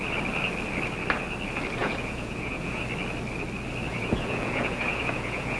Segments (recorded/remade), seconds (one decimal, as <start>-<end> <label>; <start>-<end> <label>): 0.0-1.8 recorded; 1.8-2.8 remade; 2.8-3.9 recorded; 3.9-5.6 remade